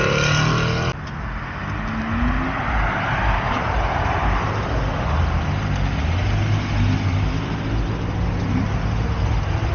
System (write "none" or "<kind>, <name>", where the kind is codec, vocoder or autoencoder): none